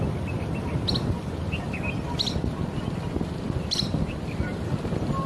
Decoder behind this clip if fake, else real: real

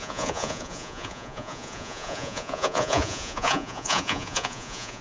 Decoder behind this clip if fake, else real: fake, vocoder, Vocos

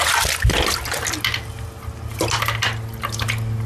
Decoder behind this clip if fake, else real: real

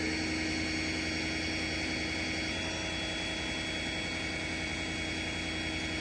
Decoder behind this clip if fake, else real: real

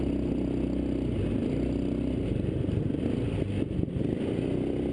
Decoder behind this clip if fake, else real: real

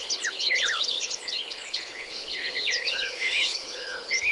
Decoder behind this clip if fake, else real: fake, codec, HILCodec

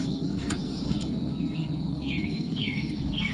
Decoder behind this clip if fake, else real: fake, codec, SNAC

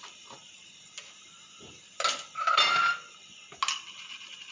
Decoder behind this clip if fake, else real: real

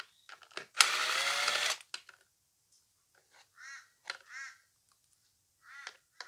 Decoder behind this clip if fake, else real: real